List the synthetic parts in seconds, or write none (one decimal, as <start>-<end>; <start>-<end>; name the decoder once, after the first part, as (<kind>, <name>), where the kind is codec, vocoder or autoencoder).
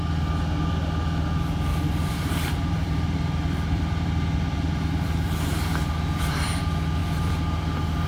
1.7-6.6 (vocoder, BigVGAN v2); 7.0-8.1